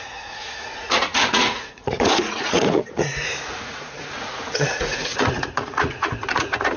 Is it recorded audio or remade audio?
remade